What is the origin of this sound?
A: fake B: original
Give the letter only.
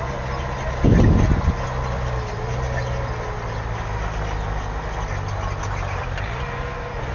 B